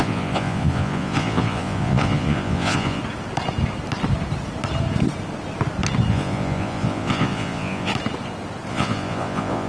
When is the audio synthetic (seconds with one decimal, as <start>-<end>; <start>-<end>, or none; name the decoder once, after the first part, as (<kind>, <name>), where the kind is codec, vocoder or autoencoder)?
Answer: 0.0-3.0 (vocoder, Vocos); 6.1-7.9; 8.7-9.7